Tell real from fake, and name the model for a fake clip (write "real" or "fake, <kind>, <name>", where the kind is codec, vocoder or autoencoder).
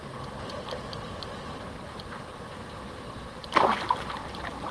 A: fake, vocoder, BigVGAN v2